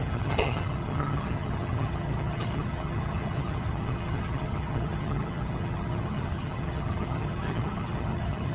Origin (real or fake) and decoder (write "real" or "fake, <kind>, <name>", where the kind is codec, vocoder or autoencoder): fake, vocoder, HiFi-GAN